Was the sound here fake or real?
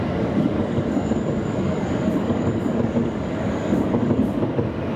fake